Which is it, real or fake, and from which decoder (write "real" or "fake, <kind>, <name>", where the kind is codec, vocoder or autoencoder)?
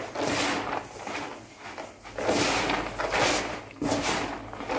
real